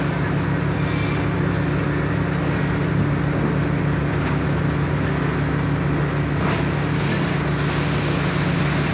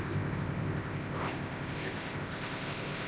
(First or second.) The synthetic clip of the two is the second